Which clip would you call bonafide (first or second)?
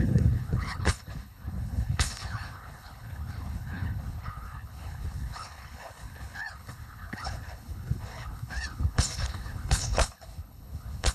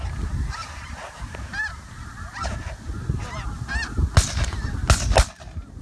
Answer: second